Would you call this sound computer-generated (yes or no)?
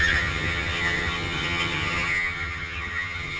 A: yes